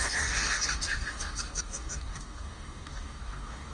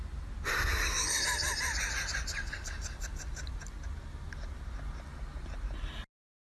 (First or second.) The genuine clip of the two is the second